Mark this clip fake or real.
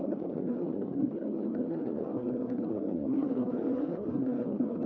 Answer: fake